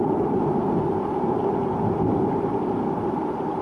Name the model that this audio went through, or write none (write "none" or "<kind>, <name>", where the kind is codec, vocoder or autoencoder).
none